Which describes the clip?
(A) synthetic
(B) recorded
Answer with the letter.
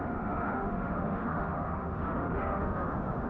A